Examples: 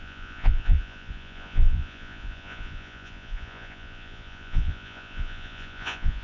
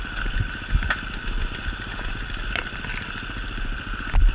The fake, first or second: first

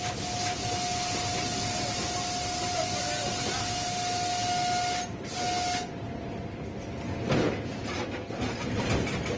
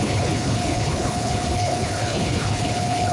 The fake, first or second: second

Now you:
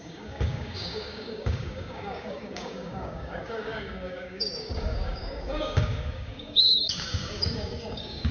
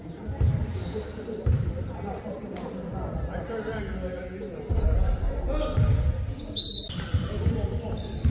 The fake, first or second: first